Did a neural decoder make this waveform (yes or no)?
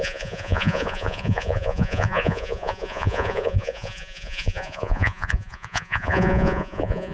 yes